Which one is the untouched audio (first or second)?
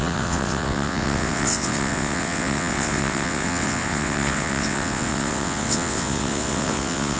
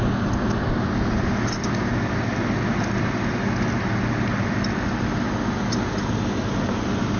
second